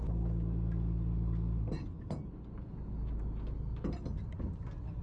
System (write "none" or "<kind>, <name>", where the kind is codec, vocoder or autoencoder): none